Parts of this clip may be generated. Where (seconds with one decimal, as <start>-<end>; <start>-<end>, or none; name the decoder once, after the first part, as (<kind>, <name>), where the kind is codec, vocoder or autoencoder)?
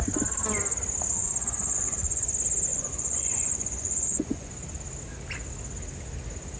1.1-2.2 (vocoder, Vocos); 2.7-4.5